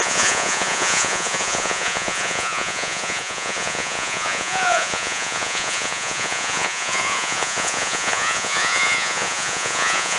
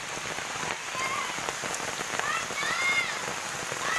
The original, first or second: second